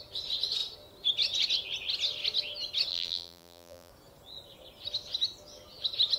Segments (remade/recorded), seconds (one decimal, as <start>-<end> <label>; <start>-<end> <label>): 0.0-2.9 recorded; 2.9-3.9 remade; 3.9-6.2 recorded